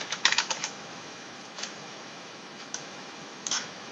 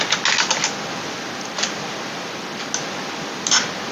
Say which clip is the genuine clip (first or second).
second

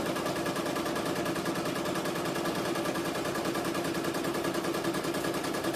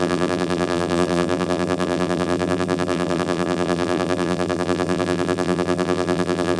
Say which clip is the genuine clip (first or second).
first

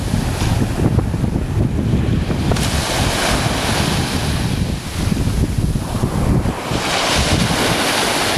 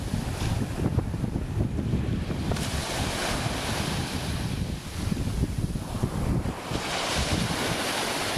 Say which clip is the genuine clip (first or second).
first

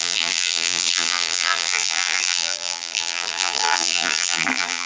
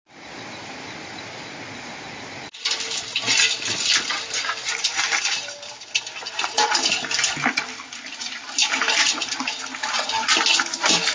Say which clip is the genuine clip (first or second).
second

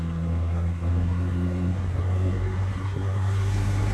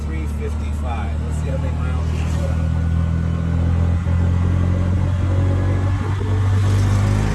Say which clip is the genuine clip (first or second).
second